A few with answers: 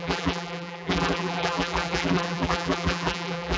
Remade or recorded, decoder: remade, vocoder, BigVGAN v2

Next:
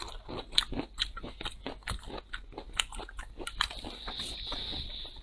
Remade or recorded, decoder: recorded